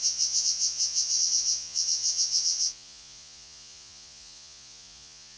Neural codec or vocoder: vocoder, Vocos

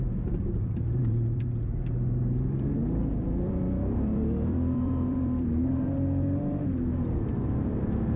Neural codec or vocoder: vocoder, BigVGAN v2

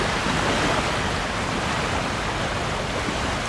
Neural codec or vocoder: none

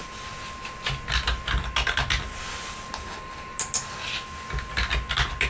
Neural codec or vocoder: none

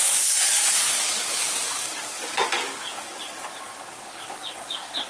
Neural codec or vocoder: codec, DAC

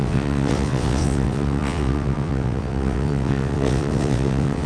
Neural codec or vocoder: vocoder, WaveNeXt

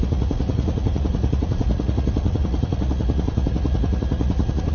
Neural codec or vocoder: vocoder, Vocos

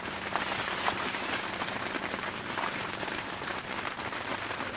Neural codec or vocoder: vocoder, BigVGAN v2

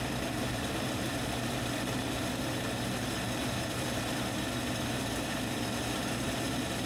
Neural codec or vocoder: none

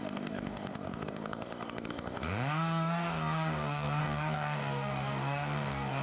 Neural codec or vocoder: codec, DAC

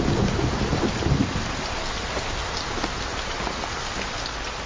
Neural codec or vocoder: none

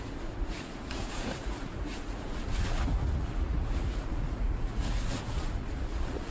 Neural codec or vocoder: vocoder, Vocos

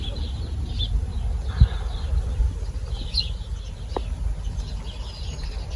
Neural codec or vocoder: none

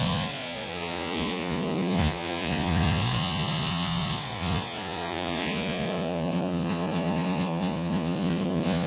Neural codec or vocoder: vocoder, Vocos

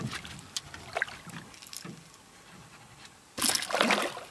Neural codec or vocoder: none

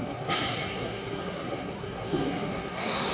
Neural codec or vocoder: codec, SNAC